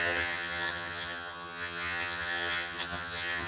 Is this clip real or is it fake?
fake